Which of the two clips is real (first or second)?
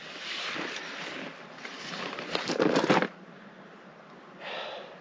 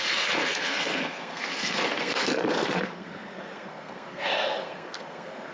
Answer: first